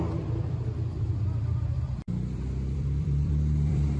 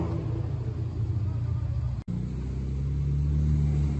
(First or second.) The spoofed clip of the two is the first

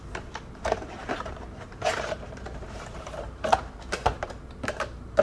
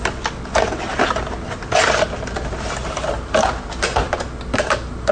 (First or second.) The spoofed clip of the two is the first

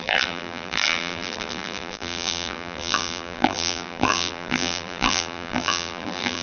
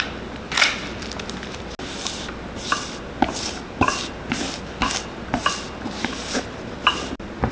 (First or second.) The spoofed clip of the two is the first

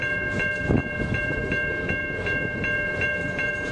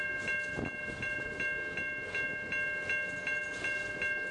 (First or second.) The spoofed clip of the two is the first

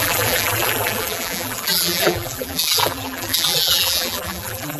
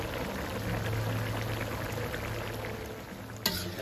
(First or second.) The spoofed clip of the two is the first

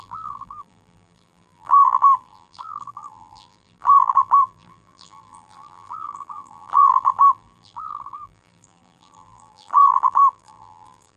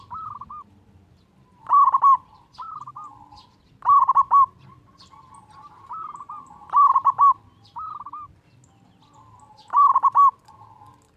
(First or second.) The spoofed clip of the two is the first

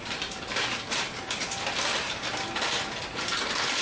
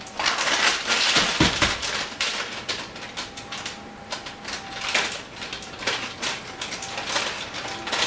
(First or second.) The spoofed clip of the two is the first